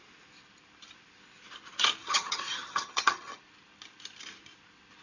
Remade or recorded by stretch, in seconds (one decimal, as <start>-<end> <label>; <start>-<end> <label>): 0.0-2.0 recorded; 2.0-3.4 remade; 3.4-5.0 recorded